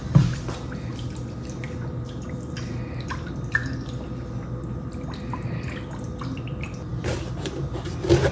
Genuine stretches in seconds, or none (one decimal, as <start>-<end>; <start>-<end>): 0.0-8.3

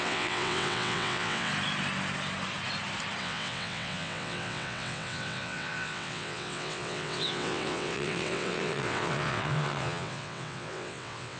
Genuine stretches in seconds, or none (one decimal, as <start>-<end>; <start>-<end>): 1.5-3.2